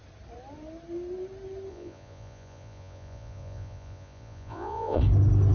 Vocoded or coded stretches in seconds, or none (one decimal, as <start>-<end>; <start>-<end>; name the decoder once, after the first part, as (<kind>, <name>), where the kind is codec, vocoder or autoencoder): 1.7-5.0 (vocoder, Vocos)